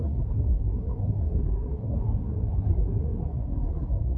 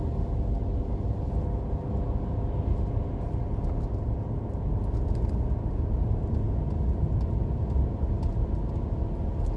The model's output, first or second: first